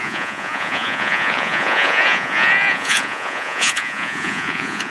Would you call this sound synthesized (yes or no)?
yes